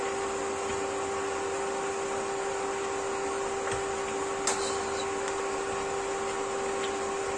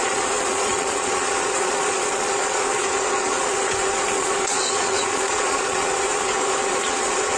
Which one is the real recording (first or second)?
first